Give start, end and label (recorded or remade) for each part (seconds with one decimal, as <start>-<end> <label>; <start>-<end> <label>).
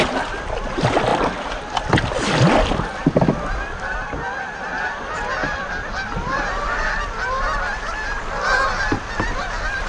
0.0-9.9 recorded